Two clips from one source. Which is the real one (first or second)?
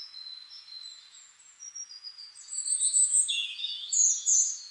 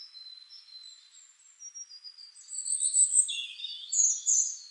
second